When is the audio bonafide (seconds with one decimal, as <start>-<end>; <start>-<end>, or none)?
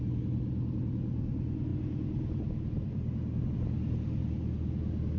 0.0-5.2